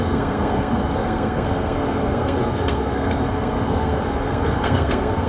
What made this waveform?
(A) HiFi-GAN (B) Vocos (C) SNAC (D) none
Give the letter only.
C